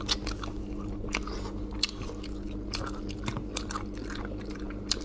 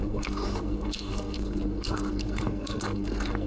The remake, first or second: second